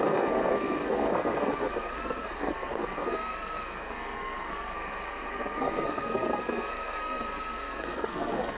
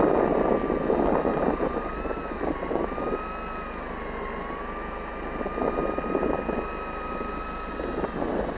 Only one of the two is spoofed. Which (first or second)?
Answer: first